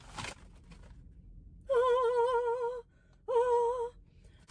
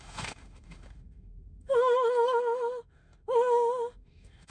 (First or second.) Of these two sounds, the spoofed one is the second